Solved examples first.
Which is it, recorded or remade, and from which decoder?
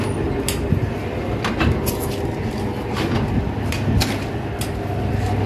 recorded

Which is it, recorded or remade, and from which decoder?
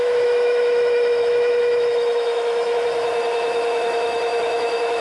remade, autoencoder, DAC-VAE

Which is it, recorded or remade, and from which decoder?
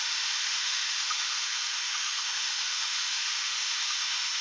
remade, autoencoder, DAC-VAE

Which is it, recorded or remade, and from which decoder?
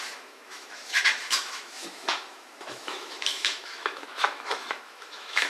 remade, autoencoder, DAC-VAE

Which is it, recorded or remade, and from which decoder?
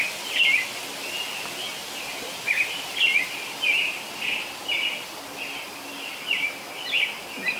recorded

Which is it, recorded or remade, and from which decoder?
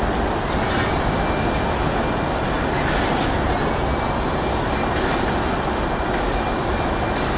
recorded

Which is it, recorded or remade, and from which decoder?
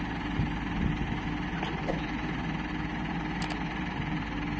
recorded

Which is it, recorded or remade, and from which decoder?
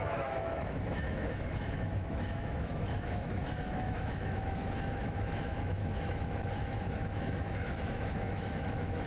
remade, autoencoder, DAC-VAE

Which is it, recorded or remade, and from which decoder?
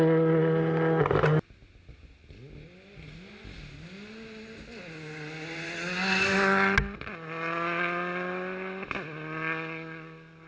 recorded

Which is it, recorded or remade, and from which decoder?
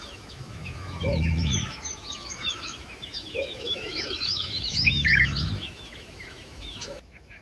remade, autoencoder, DAC-VAE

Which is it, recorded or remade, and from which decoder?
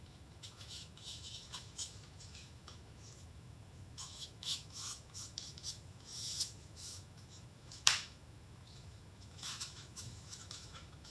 remade, autoencoder, DAC-VAE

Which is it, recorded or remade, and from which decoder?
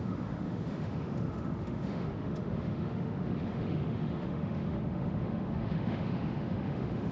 remade, autoencoder, DAC-VAE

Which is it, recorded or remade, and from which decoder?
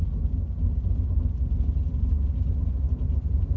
recorded